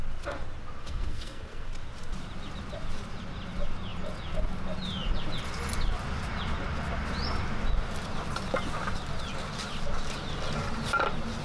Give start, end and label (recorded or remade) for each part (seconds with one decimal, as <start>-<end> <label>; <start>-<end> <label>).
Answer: 0.0-0.8 recorded; 0.8-1.7 remade; 1.7-11.4 recorded

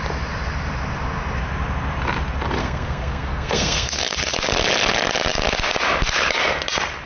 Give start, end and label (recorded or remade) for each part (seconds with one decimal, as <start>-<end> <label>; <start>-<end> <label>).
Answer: 0.0-2.6 recorded; 2.6-4.0 remade; 4.0-7.1 recorded

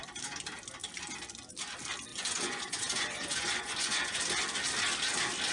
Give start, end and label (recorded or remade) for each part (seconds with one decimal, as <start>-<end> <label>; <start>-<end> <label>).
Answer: 0.0-2.1 recorded; 2.1-4.2 remade; 4.2-5.5 recorded